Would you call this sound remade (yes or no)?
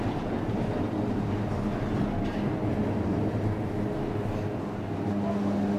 no